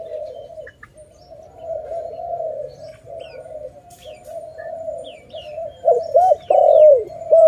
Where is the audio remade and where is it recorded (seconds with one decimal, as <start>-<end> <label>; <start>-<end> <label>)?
0.0-4.5 recorded; 4.5-7.5 remade